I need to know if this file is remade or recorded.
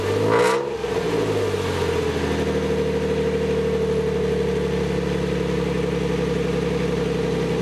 recorded